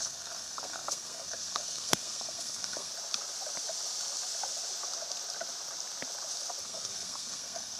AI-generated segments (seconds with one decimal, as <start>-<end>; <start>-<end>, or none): 0.0-2.9; 6.6-7.8